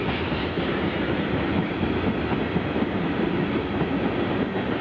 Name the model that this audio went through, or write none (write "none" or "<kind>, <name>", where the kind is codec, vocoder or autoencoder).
none